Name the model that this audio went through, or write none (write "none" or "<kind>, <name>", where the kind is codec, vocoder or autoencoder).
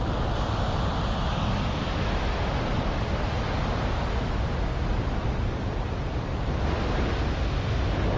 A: none